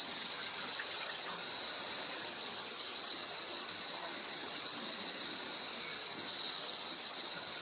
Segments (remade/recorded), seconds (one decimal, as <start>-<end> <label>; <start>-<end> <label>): 0.0-1.4 remade; 1.4-2.1 recorded; 2.1-5.2 remade; 5.2-5.7 recorded; 5.7-7.6 remade